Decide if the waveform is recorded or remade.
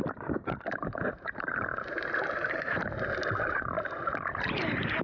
remade